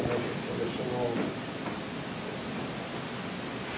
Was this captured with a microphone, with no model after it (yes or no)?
yes